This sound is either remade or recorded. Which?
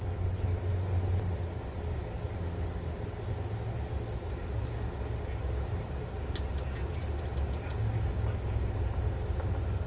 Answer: recorded